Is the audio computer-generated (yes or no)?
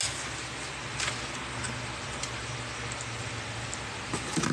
no